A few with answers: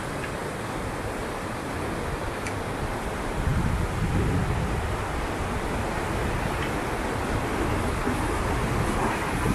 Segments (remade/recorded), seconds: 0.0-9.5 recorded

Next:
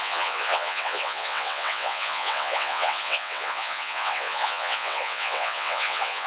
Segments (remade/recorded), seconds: 0.0-6.3 remade

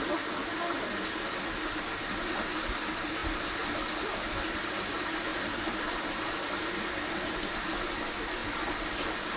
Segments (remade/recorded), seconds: 0.0-9.4 recorded

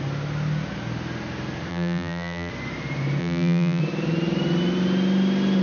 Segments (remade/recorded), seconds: 0.0-1.7 recorded; 1.7-2.5 remade; 2.5-3.2 recorded; 3.2-3.8 remade; 3.8-5.6 recorded

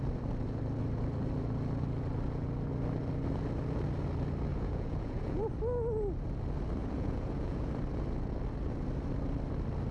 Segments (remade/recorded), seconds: 0.0-4.5 recorded; 4.5-5.5 remade; 5.5-6.8 recorded; 6.8-7.7 remade; 7.7-9.9 recorded

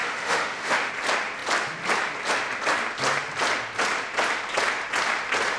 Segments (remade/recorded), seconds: 0.0-0.9 remade; 0.9-5.6 recorded

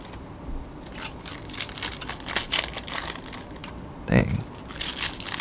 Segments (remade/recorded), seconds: 0.0-3.6 recorded; 3.6-4.2 remade; 4.2-5.4 recorded